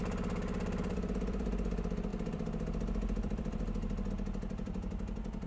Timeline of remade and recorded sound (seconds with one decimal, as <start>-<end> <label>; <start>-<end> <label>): 0.0-0.8 recorded; 0.8-5.5 remade

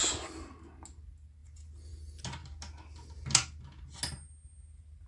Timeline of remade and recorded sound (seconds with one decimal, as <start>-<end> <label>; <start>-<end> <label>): 0.0-5.1 recorded

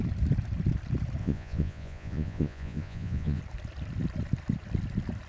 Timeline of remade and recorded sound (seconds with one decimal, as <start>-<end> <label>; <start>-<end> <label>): 0.0-1.2 recorded; 1.2-3.4 remade; 3.4-5.3 recorded

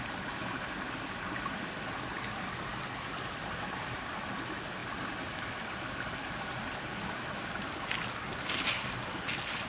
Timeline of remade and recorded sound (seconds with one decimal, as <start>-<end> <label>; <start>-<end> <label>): 0.0-9.7 recorded